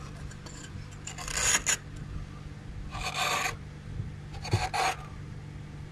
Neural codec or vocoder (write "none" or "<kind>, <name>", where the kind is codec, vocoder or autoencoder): none